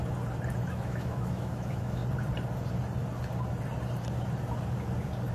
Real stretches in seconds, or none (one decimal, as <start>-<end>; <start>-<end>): 0.0-0.7; 2.0-5.3